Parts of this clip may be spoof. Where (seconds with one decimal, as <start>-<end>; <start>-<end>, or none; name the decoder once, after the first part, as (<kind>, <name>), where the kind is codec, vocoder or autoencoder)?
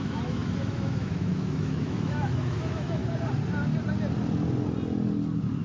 0.0-3.0 (autoencoder, DAC-VAE)